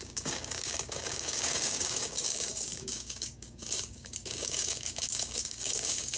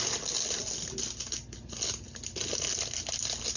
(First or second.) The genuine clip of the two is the second